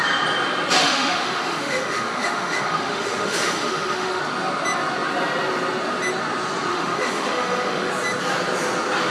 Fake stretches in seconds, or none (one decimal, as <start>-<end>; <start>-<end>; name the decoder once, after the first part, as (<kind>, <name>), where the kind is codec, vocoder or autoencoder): 0.8-4.2 (autoencoder, DAC-VAE); 6.7-7.9